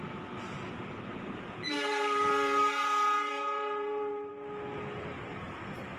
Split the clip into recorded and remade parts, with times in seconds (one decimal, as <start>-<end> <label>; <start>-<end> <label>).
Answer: 0.0-1.2 recorded; 1.2-4.3 remade; 4.3-6.0 recorded